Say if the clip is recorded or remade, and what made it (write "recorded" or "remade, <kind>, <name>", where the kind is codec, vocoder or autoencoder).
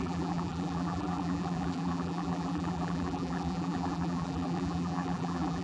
remade, vocoder, BigVGAN v2